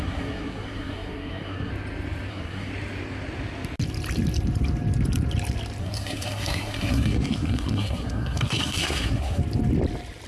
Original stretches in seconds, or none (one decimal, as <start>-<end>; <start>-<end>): 1.7-2.3; 2.7-5.8; 9.4-10.3